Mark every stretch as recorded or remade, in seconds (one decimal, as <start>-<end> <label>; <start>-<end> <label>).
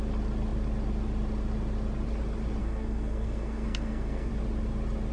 0.0-2.6 recorded; 2.6-4.3 remade; 4.3-5.1 recorded